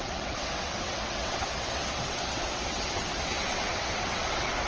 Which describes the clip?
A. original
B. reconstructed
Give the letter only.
B